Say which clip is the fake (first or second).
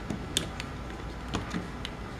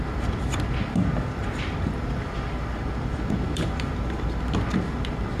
second